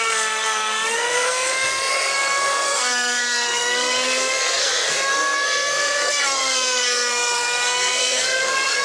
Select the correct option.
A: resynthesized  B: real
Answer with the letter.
A